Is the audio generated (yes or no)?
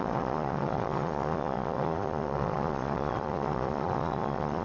yes